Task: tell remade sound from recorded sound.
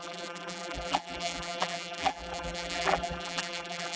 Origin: remade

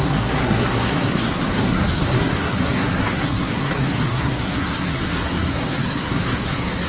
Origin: remade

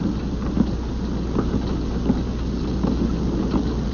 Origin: recorded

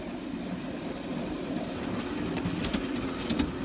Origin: recorded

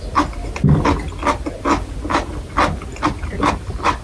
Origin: recorded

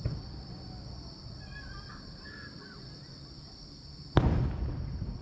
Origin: remade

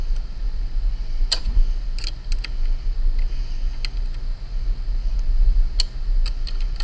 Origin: recorded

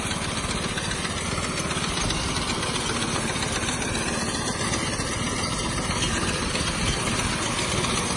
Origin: recorded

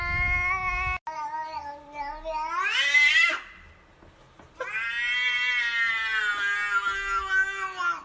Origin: recorded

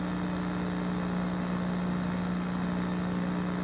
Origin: recorded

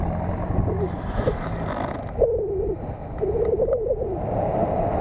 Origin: recorded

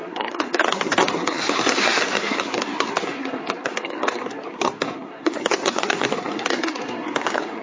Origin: remade